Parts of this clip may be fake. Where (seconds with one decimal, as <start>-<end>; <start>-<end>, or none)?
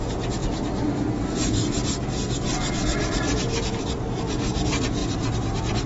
none